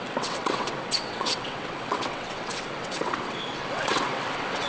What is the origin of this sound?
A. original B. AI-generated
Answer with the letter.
B